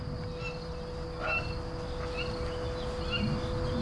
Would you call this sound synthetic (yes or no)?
no